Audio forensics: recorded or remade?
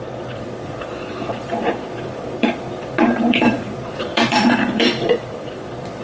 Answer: remade